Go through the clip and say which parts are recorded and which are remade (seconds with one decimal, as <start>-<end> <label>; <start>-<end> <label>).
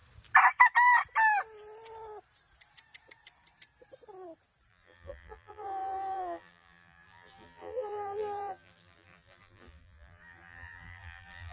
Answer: 0.0-4.7 recorded; 4.7-11.5 remade